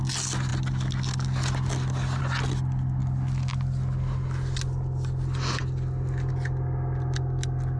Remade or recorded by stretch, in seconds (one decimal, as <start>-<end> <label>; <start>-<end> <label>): 0.0-7.8 recorded

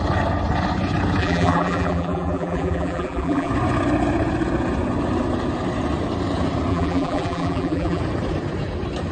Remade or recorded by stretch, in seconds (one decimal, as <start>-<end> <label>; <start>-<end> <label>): 0.0-1.2 recorded; 1.2-3.5 remade; 3.5-6.7 recorded; 6.7-8.0 remade; 8.0-9.1 recorded

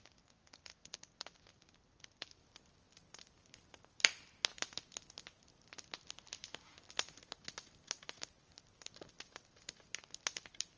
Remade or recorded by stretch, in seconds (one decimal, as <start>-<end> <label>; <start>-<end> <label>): 0.0-0.7 recorded; 0.7-2.6 remade; 2.6-10.8 recorded

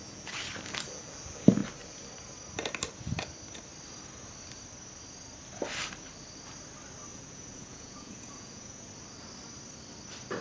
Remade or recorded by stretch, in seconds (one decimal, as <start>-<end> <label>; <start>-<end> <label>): 0.0-7.1 recorded; 7.1-8.9 remade; 8.9-10.4 recorded

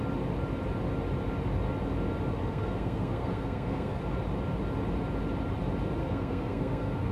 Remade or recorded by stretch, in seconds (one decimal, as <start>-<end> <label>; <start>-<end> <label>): 0.0-2.4 recorded; 2.4-4.0 remade; 4.0-6.0 recorded; 6.0-7.1 remade

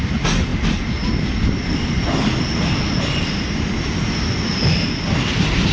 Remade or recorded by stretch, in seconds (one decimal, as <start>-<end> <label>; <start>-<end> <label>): 0.0-5.7 recorded